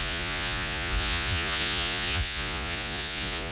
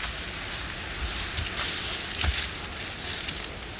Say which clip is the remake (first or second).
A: first